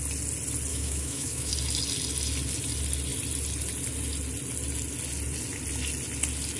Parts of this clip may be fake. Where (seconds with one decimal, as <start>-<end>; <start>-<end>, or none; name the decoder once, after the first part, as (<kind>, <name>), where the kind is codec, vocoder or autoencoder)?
0.7-1.5 (autoencoder, DAC-VAE)